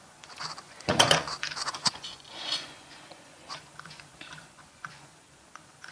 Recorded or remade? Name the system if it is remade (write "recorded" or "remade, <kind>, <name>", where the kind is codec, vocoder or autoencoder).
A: remade, vocoder, Vocos